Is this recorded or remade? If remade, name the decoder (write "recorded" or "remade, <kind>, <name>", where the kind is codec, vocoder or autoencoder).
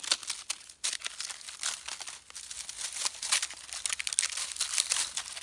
recorded